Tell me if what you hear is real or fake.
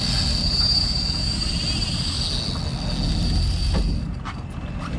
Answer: real